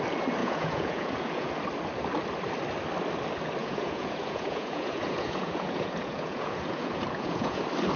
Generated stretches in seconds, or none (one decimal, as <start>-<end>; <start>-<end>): 0.4-1.5; 3.6-7.6